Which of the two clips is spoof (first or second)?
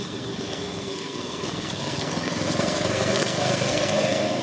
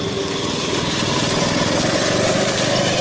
first